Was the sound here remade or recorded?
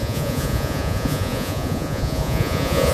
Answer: remade